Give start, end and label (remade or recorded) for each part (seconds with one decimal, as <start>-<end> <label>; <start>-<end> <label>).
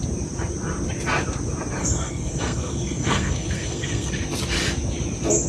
0.0-1.8 recorded; 1.8-4.1 remade; 4.1-5.5 recorded